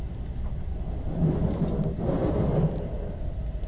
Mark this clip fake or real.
real